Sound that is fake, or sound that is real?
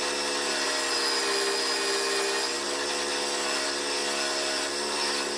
real